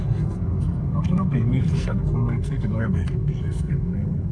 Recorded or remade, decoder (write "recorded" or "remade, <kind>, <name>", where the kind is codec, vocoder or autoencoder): remade, codec, SNAC